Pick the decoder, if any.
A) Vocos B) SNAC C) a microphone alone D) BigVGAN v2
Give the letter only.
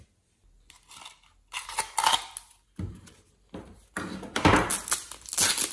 C